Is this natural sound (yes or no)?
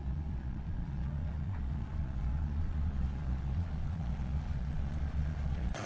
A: no